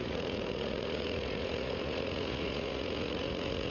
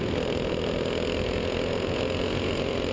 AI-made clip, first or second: first